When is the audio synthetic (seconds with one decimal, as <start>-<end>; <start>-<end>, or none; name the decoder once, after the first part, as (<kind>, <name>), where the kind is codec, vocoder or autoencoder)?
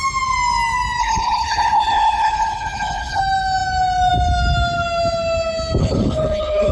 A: 1.0-3.2 (codec, HILCodec); 5.8-6.7